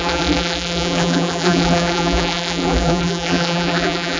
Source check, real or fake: fake